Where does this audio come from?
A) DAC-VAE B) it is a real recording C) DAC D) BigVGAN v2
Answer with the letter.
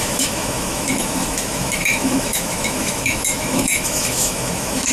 A